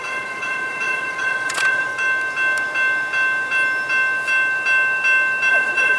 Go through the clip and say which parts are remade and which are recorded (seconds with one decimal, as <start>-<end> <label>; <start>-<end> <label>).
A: 0.0-1.9 remade; 1.9-5.5 recorded; 5.5-6.0 remade